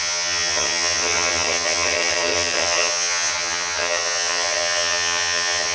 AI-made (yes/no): yes